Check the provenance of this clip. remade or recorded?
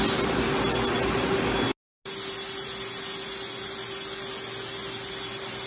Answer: recorded